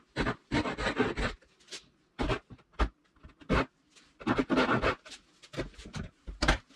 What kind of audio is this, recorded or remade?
recorded